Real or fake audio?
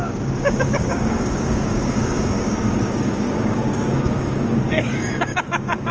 fake